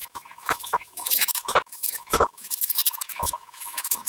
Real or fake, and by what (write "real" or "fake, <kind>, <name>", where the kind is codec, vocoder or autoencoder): fake, autoencoder, DAC-VAE